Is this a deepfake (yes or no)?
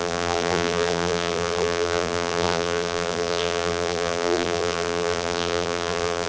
yes